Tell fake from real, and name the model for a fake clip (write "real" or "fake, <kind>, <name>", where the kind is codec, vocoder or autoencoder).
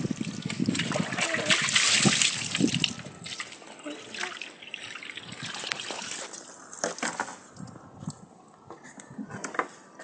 real